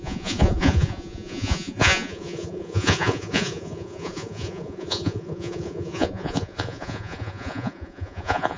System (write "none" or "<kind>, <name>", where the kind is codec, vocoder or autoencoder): vocoder, Vocos